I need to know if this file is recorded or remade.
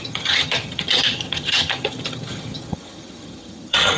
remade